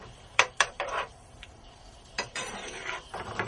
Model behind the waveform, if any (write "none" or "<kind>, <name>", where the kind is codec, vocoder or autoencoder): vocoder, BigVGAN v2